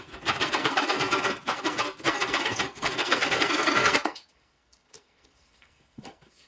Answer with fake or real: fake